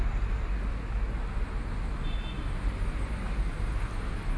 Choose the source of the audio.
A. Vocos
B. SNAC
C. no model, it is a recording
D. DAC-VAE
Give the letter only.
C